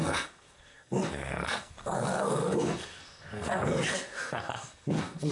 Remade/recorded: remade